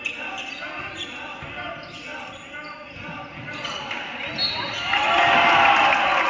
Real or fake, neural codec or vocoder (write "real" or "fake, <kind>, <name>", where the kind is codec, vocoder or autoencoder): real